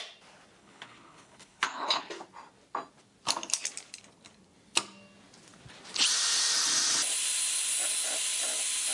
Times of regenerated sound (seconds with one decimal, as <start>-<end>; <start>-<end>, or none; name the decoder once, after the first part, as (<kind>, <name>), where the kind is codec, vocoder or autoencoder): 0.6-2.1 (codec, HILCodec)